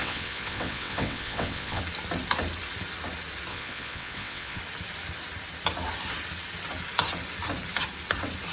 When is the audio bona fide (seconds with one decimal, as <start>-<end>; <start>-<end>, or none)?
1.8-3.5; 4.6-8.5